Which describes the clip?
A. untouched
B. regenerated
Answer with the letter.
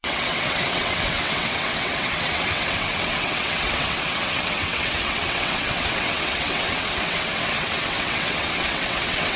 B